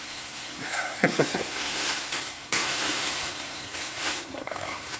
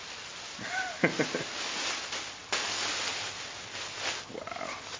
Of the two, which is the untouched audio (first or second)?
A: second